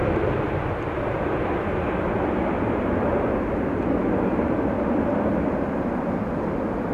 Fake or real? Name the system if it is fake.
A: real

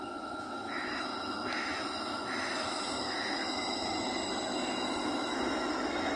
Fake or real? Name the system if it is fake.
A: fake, autoencoder, DAC-VAE